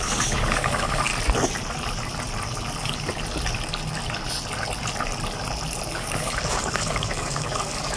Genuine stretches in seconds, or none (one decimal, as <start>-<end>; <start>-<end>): 1.1-5.9